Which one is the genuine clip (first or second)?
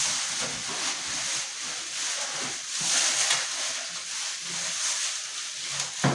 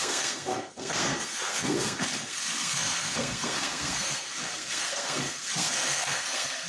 first